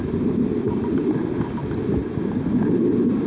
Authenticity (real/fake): real